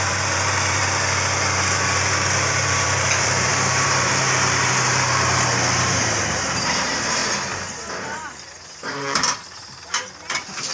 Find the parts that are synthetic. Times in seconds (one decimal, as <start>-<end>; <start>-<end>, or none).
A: 0.0-0.8; 2.1-7.2; 8.0-10.7